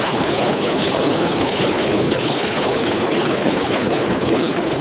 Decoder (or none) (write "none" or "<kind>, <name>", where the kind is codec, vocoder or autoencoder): codec, HILCodec